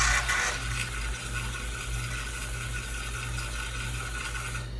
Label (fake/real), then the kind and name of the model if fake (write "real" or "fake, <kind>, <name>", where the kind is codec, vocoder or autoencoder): real